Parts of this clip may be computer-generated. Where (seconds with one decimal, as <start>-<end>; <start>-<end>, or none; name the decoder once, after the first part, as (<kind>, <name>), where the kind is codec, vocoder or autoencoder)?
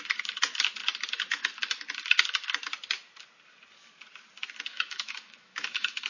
4.7-6.1 (autoencoder, DAC-VAE)